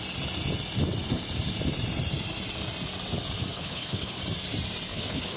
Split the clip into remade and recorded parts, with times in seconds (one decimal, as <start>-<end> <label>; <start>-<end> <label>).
0.0-3.5 recorded; 3.5-4.2 remade; 4.2-4.9 recorded; 4.9-5.4 remade